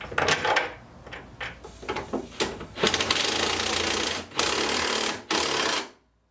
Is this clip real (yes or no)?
yes